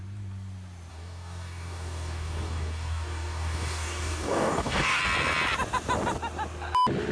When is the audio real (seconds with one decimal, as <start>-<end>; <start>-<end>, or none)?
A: 0.0-0.9; 5.0-7.1